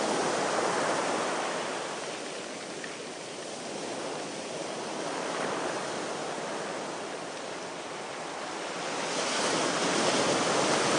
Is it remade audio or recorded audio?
recorded